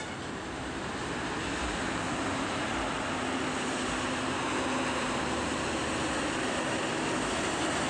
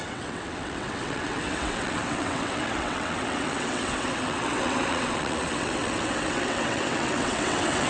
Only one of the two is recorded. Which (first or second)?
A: first